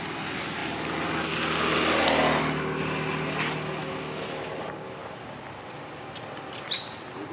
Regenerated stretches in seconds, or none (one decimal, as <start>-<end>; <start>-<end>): 3.8-4.5